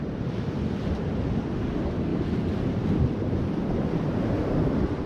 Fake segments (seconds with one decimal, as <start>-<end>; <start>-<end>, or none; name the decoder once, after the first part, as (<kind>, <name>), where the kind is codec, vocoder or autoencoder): none